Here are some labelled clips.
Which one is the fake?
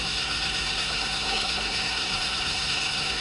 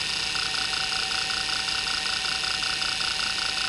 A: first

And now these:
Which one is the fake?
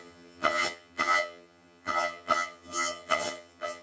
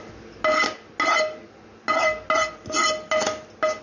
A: first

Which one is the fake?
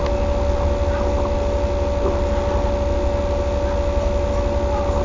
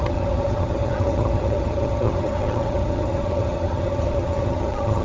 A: second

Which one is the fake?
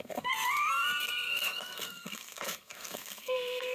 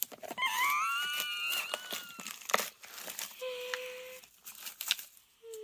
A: first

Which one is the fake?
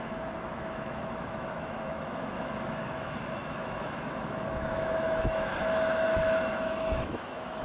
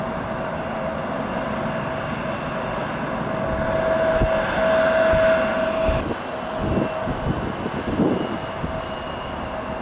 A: first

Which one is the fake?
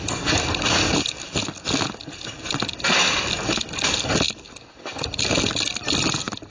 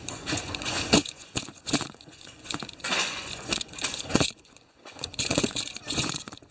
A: second